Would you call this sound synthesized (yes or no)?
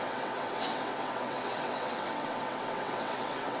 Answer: yes